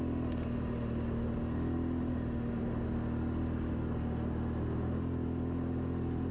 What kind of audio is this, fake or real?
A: real